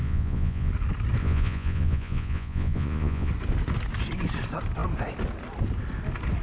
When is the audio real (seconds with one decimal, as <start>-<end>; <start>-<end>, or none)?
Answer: 0.7-1.2; 3.3-6.4